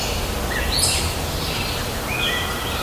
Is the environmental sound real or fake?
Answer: real